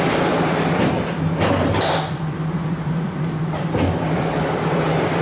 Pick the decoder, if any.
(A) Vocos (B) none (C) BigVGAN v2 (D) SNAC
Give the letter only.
C